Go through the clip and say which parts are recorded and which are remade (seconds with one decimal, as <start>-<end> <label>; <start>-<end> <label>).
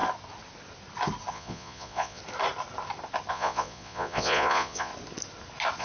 0.0-1.3 recorded; 1.3-2.2 remade; 2.2-3.3 recorded; 3.3-4.9 remade; 4.9-5.8 recorded